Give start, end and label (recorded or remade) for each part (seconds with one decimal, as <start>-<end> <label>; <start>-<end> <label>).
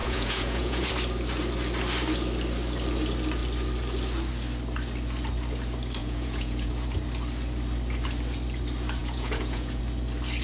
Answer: 0.0-0.9 remade; 0.9-6.0 recorded; 6.0-6.7 remade; 6.7-9.0 recorded; 9.0-9.8 remade; 9.8-10.4 recorded